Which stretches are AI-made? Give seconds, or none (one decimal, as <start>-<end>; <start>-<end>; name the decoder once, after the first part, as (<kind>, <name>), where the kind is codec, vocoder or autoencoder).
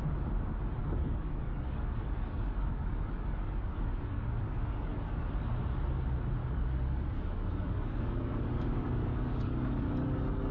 0.8-5.3 (codec, DAC); 6.4-10.5